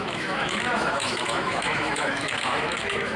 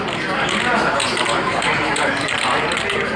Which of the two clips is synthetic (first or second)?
first